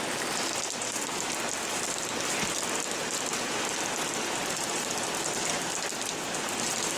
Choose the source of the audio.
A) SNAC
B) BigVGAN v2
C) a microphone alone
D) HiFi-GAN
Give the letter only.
C